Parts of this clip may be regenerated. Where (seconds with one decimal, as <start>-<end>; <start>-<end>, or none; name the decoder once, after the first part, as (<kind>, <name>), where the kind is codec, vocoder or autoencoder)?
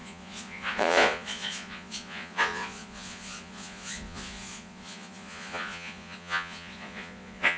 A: 0.0-7.6 (vocoder, Vocos)